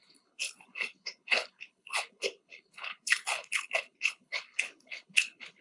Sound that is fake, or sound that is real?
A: fake